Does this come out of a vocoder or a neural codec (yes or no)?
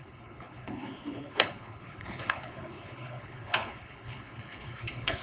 yes